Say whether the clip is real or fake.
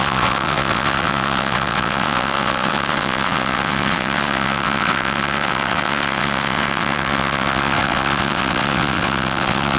fake